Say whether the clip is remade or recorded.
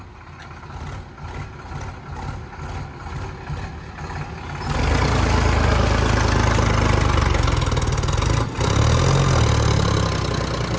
recorded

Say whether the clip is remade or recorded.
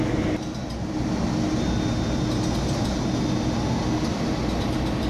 recorded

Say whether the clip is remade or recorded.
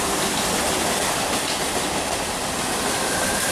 recorded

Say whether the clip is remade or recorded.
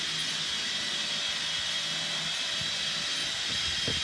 recorded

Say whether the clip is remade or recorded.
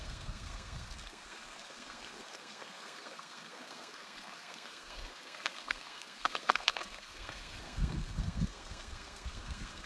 remade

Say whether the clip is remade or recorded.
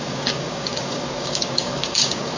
remade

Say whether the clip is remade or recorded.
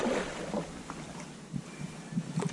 recorded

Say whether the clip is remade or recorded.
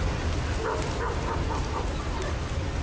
recorded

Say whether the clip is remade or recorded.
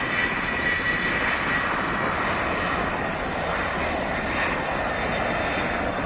recorded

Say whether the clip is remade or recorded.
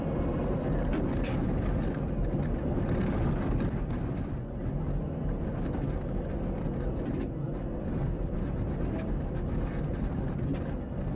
recorded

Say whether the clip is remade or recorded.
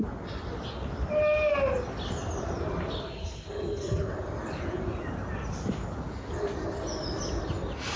recorded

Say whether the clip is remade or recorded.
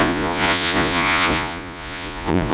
remade